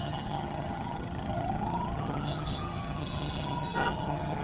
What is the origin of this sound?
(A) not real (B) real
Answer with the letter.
A